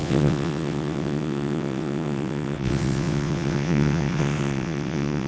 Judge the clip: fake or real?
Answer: fake